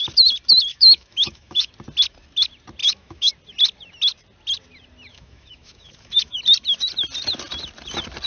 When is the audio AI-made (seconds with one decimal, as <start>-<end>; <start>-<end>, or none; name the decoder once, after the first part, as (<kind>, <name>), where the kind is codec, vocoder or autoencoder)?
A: 0.7-1.7 (autoencoder, DAC-VAE); 2.8-3.3; 5.1-6.4